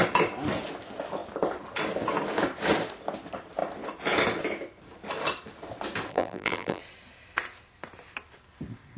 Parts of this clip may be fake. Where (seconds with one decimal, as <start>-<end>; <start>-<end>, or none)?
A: 6.1-6.8